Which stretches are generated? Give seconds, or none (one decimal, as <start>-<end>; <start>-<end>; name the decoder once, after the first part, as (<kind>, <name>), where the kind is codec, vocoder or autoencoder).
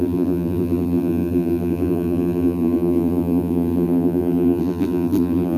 0.0-5.6 (vocoder, BigVGAN v2)